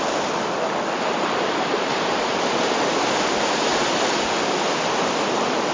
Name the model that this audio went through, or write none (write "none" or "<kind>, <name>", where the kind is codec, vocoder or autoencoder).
none